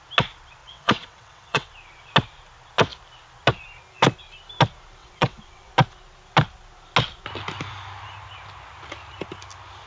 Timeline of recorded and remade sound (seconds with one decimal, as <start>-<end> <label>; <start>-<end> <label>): 0.0-0.6 recorded; 0.6-1.7 remade; 1.7-5.0 recorded; 5.0-5.7 remade; 5.7-9.9 recorded